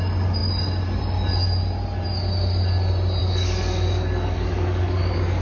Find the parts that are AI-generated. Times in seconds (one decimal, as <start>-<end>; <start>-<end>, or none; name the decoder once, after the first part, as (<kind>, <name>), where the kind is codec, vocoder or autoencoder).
3.2-5.4 (codec, DAC)